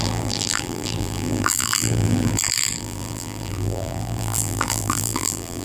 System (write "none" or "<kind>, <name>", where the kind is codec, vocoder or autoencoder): vocoder, BigVGAN v2